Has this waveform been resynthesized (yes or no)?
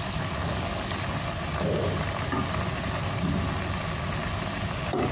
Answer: no